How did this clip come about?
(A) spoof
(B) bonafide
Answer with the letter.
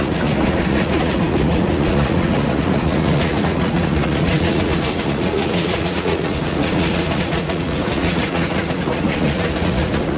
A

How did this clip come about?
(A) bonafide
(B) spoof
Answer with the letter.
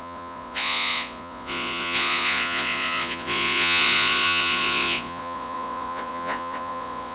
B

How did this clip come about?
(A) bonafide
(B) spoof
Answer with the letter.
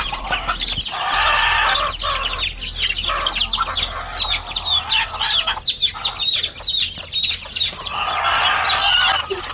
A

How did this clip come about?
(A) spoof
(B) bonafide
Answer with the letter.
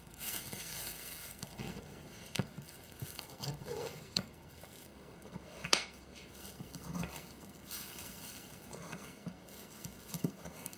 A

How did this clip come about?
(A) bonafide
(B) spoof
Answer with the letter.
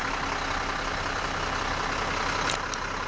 A